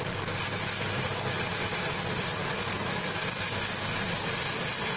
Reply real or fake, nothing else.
real